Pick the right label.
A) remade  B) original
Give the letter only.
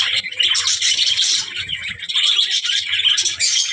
A